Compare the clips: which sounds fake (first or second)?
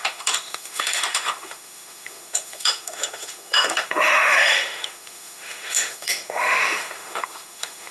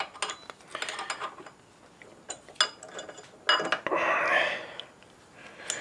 first